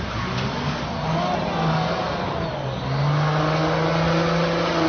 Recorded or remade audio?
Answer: recorded